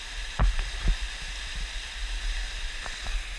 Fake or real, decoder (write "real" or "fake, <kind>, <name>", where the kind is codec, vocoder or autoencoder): real